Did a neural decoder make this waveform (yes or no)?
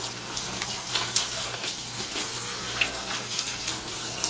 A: yes